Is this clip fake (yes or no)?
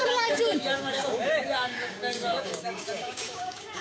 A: yes